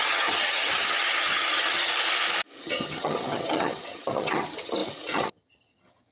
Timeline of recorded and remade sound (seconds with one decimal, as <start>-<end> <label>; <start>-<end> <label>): 0.0-1.9 remade; 1.9-2.6 recorded; 2.6-6.1 remade